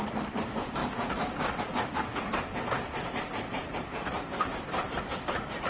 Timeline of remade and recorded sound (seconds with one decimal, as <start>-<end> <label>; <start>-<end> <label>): 0.0-5.7 remade